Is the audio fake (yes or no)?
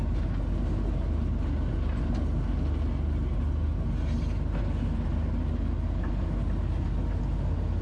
no